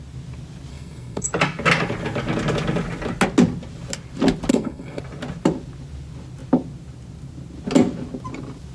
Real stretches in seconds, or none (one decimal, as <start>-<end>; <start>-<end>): 0.0-0.7; 1.3-4.5; 5.0-8.7